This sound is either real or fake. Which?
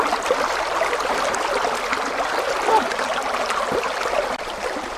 real